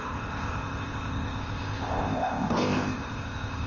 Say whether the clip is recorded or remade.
remade